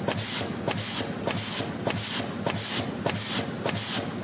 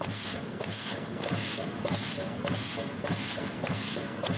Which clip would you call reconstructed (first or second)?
second